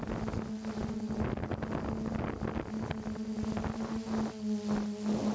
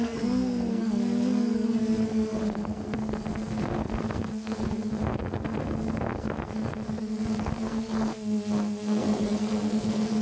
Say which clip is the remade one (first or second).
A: second